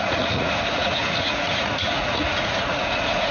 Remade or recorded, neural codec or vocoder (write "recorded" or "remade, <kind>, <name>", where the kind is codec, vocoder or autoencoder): remade, vocoder, Vocos